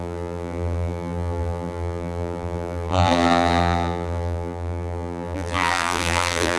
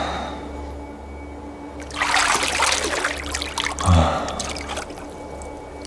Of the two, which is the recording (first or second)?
second